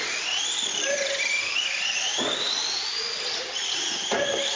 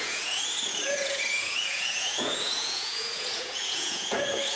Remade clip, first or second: second